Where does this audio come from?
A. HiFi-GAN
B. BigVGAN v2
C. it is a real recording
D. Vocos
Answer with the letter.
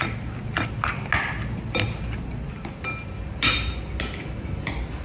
C